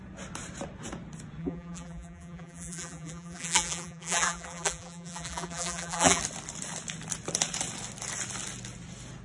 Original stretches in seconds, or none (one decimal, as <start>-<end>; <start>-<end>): 0.0-1.4; 6.2-9.2